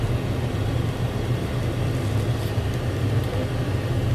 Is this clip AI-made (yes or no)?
no